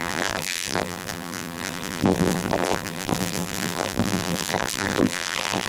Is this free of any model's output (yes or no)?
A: no